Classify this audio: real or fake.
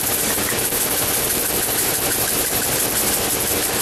real